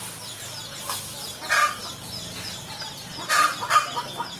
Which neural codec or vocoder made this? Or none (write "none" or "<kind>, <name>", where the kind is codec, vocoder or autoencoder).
none